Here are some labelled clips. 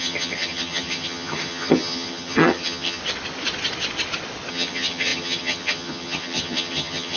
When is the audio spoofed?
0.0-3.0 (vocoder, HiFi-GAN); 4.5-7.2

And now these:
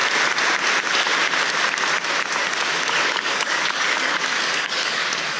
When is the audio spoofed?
2.4-5.4 (codec, DAC)

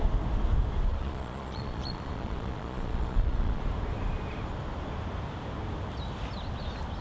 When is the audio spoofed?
0.9-3.6 (vocoder, Vocos)

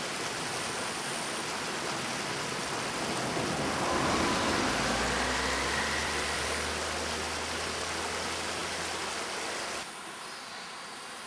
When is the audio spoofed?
6.0-6.7 (vocoder, BigVGAN v2)